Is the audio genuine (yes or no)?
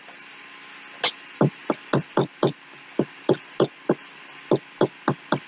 yes